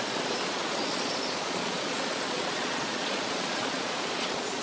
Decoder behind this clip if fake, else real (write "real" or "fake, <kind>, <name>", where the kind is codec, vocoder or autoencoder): fake, vocoder, Vocos